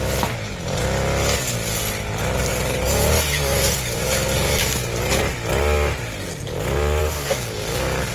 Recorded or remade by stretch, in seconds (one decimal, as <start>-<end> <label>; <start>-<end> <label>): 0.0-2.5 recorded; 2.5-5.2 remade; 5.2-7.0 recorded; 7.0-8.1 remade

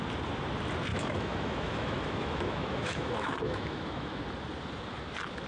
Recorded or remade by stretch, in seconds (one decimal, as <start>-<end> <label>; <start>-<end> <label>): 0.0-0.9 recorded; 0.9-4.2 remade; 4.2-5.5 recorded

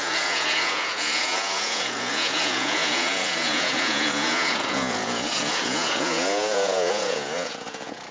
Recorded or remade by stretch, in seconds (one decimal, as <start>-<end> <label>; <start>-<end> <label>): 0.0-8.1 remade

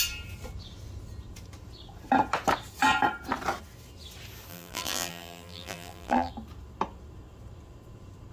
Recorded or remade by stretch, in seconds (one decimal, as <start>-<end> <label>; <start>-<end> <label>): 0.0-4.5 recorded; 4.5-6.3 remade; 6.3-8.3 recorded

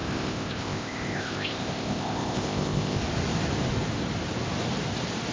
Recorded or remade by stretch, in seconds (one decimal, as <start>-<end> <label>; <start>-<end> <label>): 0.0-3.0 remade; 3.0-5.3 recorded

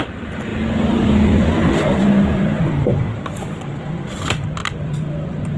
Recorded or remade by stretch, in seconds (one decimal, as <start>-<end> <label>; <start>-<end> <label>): 0.0-5.6 recorded

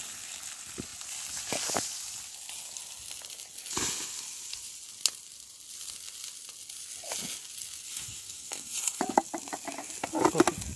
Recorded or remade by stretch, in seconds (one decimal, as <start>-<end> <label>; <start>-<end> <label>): 0.0-7.9 recorded; 7.9-9.0 remade; 9.0-10.8 recorded

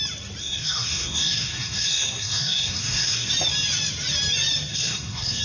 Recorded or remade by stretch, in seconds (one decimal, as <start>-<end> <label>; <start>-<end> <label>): 0.0-0.4 recorded; 0.4-3.3 remade; 3.3-4.7 recorded; 4.7-5.4 remade